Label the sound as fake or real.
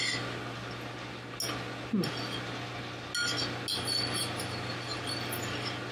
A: real